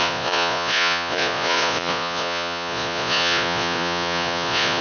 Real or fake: fake